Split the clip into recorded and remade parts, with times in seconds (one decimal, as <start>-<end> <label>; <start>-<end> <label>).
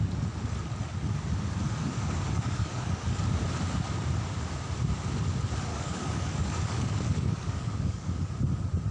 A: 0.0-1.6 recorded; 1.6-3.4 remade; 3.4-5.7 recorded; 5.7-8.4 remade; 8.4-8.9 recorded